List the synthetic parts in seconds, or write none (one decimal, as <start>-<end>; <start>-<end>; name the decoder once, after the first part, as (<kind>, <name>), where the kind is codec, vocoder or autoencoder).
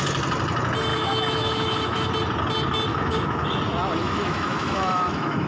0.9-2.1 (autoencoder, DAC-VAE); 2.9-3.6; 4.0-5.5